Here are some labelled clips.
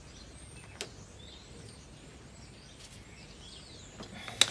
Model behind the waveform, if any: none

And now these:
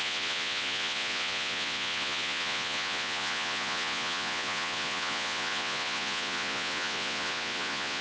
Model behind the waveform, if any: vocoder, Vocos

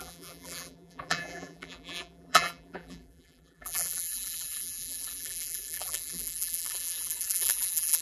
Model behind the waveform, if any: vocoder, BigVGAN v2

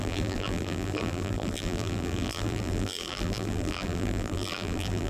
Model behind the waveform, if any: vocoder, BigVGAN v2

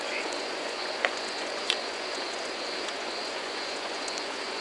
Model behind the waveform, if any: vocoder, Vocos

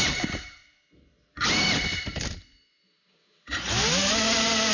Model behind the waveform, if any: none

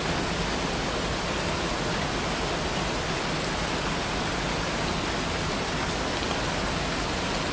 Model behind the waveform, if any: none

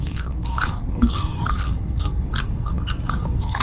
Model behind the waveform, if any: codec, SNAC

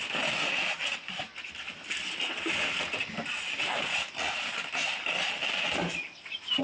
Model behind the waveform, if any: none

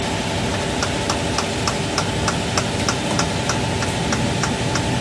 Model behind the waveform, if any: none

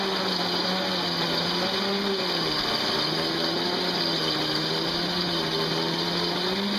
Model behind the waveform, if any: none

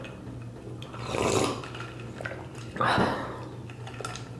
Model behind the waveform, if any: none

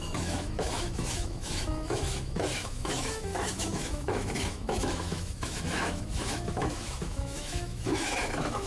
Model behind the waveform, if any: autoencoder, DAC-VAE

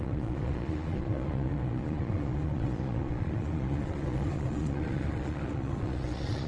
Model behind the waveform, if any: vocoder, Vocos